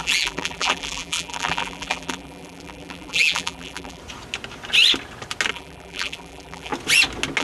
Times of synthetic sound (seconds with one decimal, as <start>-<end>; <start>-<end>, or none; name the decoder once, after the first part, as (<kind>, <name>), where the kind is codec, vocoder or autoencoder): 0.0-4.0 (vocoder, BigVGAN v2); 5.5-6.7